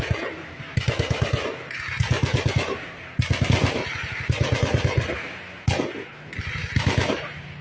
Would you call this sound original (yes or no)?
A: yes